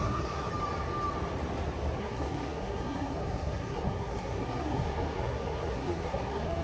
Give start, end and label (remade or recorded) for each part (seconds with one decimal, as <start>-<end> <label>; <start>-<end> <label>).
0.0-0.5 remade; 0.5-2.0 recorded; 2.0-6.6 remade